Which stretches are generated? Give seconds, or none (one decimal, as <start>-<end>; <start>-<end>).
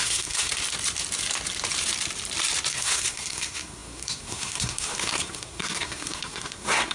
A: 0.0-0.5; 2.7-6.9